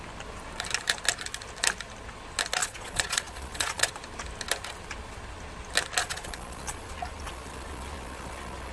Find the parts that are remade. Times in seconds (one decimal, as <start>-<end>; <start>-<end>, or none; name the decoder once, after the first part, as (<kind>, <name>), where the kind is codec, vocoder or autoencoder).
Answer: 2.6-3.9 (vocoder, Vocos); 6.0-8.7